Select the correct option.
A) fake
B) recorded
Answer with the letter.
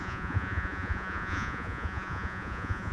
A